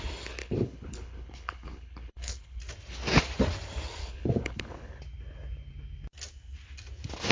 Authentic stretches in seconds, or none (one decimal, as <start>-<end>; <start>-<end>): 0.0-0.4; 2.6-4.0; 5.0-7.3